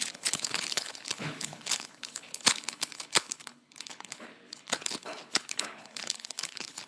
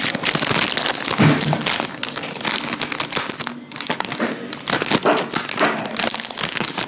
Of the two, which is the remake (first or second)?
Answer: first